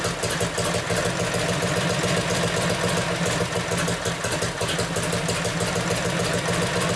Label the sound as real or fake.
real